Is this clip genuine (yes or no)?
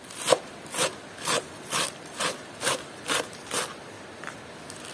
no